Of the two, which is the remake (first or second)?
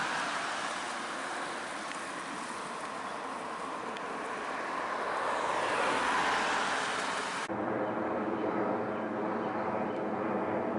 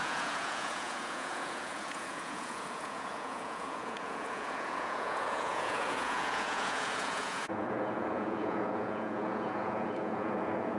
second